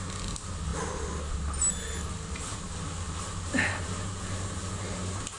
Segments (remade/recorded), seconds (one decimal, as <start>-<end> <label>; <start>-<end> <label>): 0.0-5.4 recorded